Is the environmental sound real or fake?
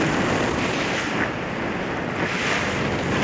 real